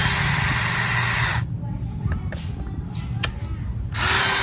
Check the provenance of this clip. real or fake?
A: real